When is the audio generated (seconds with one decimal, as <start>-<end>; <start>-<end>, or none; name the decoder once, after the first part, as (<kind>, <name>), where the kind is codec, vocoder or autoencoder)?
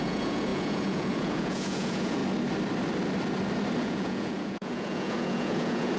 0.0-2.2 (vocoder, Vocos); 3.8-6.0